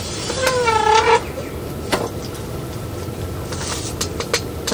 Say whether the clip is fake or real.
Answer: real